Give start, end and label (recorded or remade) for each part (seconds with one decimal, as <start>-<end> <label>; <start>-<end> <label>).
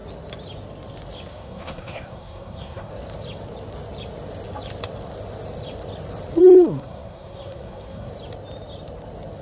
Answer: 0.0-1.3 recorded; 1.3-2.9 remade; 2.9-6.4 recorded; 6.4-8.1 remade; 8.1-9.4 recorded